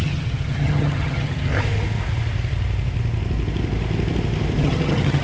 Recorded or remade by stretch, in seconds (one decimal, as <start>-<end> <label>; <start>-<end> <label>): 0.0-1.5 remade; 1.5-4.6 recorded; 4.6-5.2 remade